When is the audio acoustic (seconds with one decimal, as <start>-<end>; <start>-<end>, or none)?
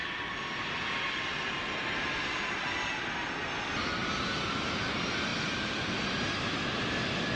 1.3-5.3; 6.1-7.4